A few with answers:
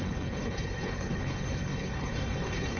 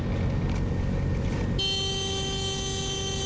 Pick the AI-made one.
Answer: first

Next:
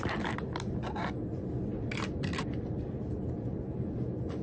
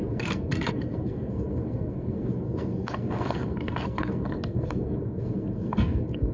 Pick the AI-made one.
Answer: second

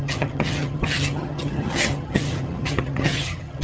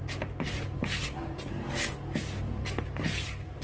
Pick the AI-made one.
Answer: first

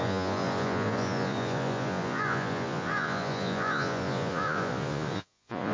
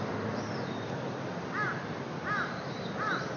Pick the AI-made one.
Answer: first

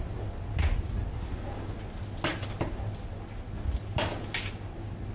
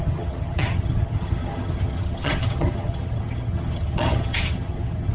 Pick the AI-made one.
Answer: second